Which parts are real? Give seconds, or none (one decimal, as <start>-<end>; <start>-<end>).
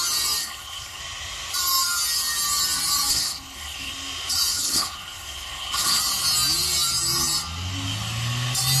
0.0-0.4; 1.0-3.1; 3.9-4.5; 6.0-8.8